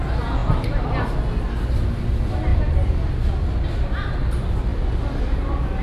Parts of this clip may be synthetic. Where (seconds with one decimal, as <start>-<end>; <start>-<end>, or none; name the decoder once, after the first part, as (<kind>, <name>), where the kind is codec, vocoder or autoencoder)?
none

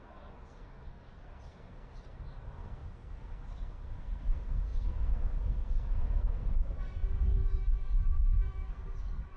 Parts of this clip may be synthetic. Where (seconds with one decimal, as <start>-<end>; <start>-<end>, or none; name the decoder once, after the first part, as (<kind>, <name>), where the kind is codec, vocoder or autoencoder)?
0.0-9.4 (codec, SNAC)

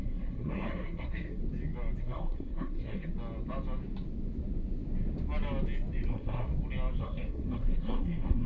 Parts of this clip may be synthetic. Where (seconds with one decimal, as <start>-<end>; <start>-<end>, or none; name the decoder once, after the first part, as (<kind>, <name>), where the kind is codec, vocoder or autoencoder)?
0.0-1.4 (codec, SNAC); 2.0-3.1; 6.1-6.5; 7.0-8.5

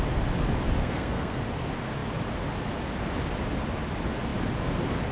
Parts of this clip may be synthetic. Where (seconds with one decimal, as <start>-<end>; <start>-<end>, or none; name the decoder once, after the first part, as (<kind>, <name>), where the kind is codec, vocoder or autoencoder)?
0.8-1.4 (codec, SNAC)

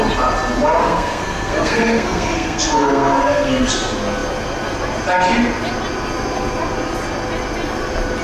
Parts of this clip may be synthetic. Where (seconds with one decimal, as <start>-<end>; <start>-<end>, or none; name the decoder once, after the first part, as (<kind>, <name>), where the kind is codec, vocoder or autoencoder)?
0.8-3.7 (codec, SNAC)

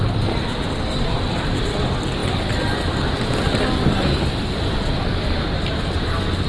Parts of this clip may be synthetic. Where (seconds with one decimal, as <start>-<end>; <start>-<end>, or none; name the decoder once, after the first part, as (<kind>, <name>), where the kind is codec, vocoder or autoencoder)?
none

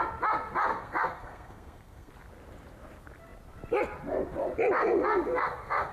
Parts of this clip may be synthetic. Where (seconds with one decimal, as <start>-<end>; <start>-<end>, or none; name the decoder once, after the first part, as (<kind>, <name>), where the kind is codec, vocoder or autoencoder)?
0.7-2.1 (codec, SNAC); 4.8-5.9

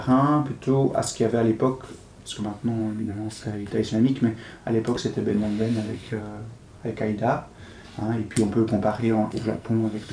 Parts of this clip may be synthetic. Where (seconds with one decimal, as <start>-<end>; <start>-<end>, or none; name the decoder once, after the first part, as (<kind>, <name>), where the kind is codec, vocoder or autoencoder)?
2.8-3.7 (codec, SNAC); 5.3-6.2; 9.0-10.1